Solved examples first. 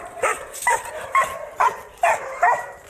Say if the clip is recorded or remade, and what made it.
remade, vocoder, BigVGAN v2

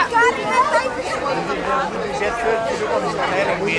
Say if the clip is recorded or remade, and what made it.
recorded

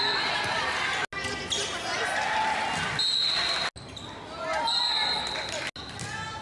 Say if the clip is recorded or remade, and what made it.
recorded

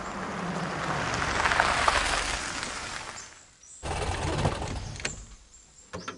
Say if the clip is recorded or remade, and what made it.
recorded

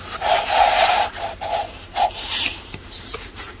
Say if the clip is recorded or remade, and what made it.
remade, vocoder, BigVGAN v2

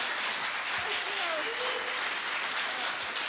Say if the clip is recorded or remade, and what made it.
recorded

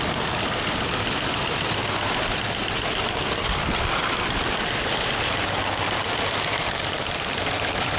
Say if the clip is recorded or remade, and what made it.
remade, vocoder, BigVGAN v2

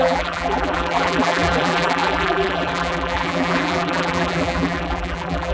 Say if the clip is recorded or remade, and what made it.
remade, vocoder, BigVGAN v2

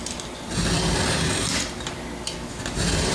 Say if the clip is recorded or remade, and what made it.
recorded